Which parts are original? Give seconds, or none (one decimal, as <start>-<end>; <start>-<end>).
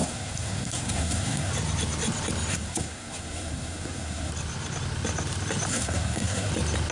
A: 1.5-2.5; 4.3-5.7; 6.5-6.9